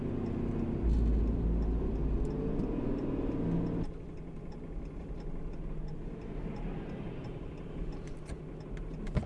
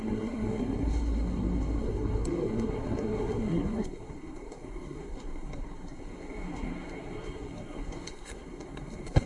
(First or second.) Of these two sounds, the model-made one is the second